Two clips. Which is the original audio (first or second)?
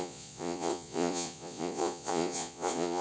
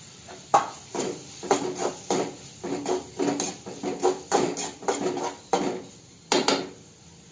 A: second